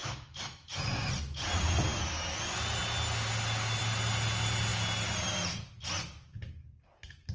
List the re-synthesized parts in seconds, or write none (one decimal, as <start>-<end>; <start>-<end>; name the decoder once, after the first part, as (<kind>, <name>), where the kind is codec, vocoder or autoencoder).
0.0-1.1 (autoencoder, DAC-VAE)